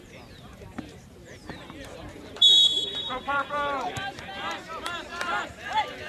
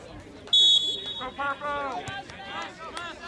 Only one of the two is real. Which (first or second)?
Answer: second